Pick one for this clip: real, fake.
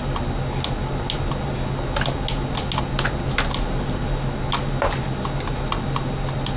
real